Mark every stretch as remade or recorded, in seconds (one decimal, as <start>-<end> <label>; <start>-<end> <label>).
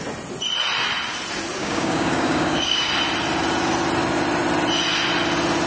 0.0-1.6 recorded; 1.6-2.9 remade; 2.9-5.7 recorded